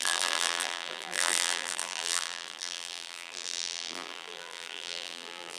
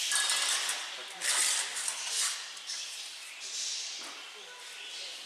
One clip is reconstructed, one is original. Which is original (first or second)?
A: second